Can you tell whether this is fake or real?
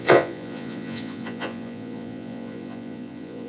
fake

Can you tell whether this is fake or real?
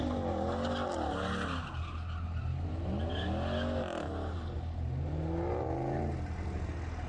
real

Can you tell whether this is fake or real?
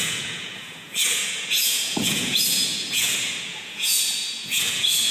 fake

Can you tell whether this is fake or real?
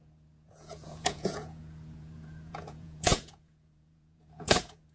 fake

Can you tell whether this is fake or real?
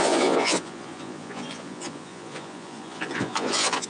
fake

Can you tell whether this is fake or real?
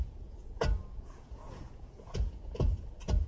fake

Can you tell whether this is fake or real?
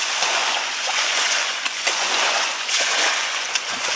fake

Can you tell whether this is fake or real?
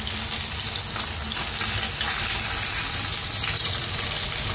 real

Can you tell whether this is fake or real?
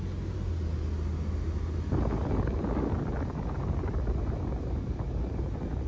real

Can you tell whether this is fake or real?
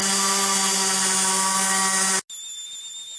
real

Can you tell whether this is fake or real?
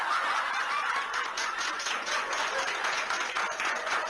fake